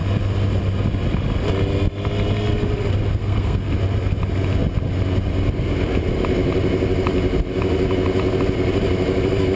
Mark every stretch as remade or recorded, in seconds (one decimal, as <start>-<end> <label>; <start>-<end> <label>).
0.0-3.2 recorded; 3.2-3.7 remade; 3.7-9.6 recorded